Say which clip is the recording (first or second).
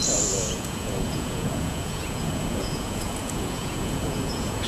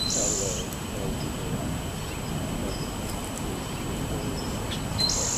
second